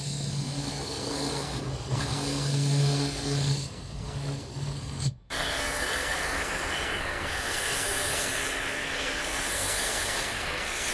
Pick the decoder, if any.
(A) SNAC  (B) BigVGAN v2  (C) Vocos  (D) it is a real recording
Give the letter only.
A